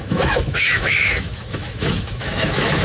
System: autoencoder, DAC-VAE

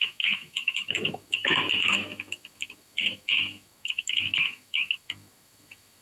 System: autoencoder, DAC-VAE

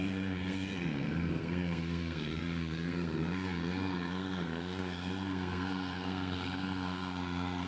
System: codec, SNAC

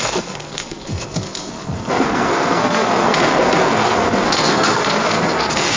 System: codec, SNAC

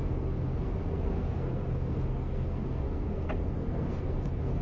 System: codec, SNAC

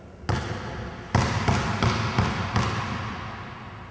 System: none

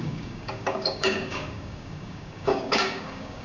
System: codec, DAC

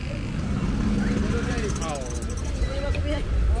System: none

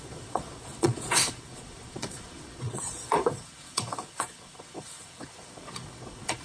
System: vocoder, Vocos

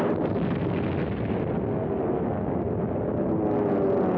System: none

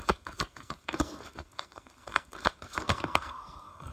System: codec, SNAC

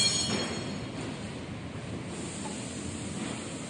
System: none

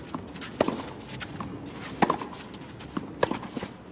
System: none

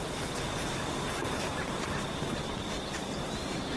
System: none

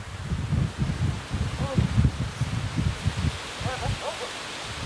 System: none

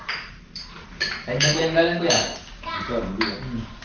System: none